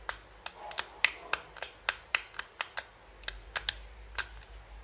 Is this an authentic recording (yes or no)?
yes